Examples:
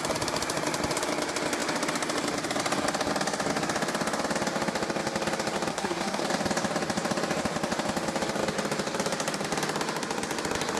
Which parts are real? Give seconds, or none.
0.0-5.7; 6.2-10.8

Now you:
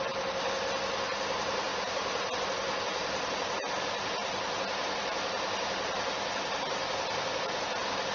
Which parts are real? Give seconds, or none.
0.0-1.7; 2.5-8.1

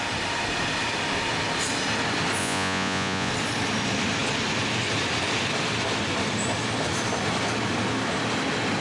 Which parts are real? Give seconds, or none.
0.0-2.4; 3.3-8.8

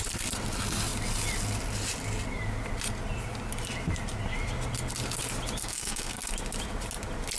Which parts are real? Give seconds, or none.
0.0-5.6; 6.3-7.4

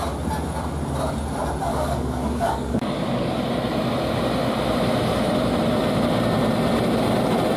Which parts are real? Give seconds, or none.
0.0-1.7; 3.4-7.6

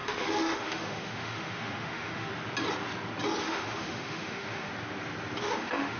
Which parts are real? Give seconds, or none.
2.3-3.4; 4.7-5.4

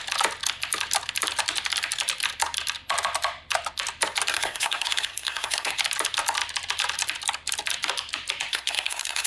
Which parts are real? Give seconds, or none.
0.0-4.3; 5.8-8.5

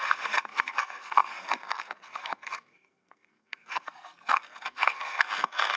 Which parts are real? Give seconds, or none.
none